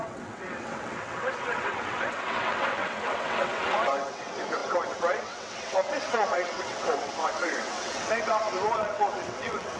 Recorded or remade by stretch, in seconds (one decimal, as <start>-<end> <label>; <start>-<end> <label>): 0.0-9.8 remade